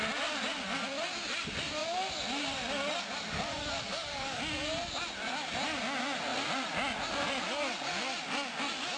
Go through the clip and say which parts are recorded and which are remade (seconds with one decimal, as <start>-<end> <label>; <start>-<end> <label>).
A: 0.0-3.5 recorded; 3.5-4.4 remade; 4.4-9.0 recorded